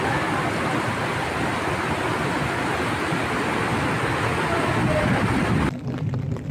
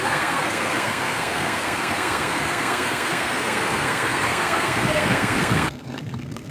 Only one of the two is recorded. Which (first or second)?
first